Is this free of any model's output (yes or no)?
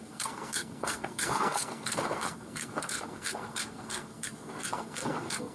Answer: no